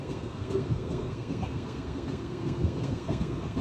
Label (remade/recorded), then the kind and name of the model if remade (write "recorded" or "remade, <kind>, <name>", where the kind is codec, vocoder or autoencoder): remade, codec, SNAC